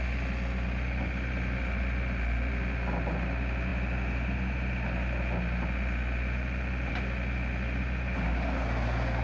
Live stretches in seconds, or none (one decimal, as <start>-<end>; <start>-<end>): 0.0-9.2

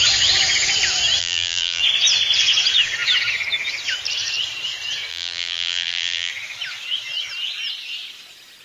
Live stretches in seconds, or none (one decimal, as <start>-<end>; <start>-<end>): 0.0-1.2; 1.8-5.1; 6.3-8.6

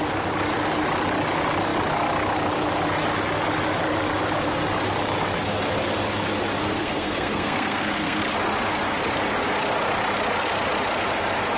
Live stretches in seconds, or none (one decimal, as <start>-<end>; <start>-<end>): 0.0-6.6; 8.2-11.6

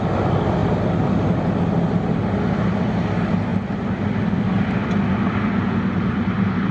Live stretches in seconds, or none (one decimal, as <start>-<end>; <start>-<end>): 0.0-6.7